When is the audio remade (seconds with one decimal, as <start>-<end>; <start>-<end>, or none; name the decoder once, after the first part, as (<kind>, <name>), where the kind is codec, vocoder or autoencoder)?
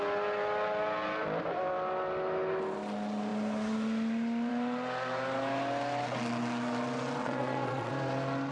7.2-7.9 (vocoder, Vocos)